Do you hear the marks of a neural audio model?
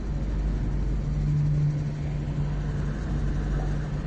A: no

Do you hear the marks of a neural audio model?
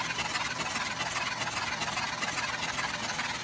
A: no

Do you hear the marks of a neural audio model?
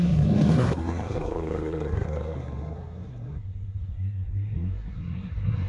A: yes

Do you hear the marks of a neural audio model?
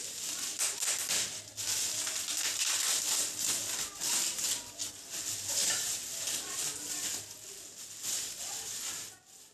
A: no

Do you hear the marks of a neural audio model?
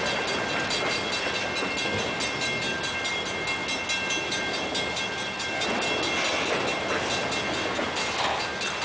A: no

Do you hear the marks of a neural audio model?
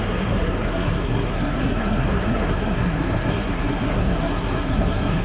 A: yes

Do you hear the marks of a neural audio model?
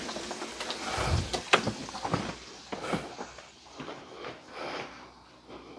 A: no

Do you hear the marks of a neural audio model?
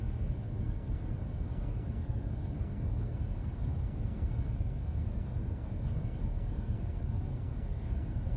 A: yes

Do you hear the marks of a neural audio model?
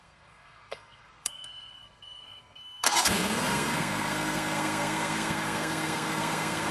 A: yes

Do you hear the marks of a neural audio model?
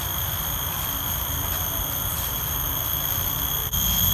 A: no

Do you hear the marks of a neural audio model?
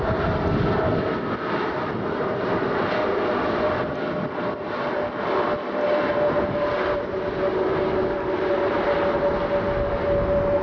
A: no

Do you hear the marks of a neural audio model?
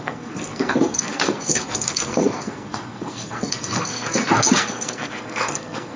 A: yes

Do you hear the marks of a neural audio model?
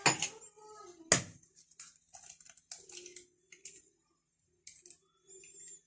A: no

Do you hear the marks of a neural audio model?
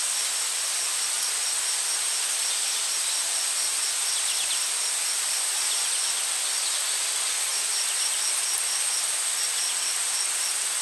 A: no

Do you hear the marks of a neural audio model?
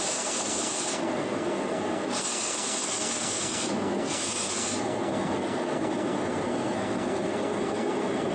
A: yes